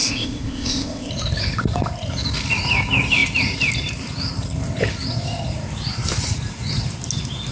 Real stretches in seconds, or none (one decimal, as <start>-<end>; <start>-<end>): 1.1-7.5